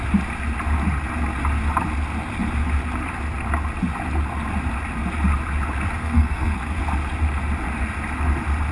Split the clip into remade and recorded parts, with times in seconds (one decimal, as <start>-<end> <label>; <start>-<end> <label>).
0.0-6.0 recorded; 6.0-6.8 remade; 6.8-8.7 recorded